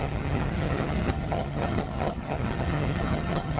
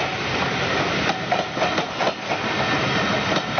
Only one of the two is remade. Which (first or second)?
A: first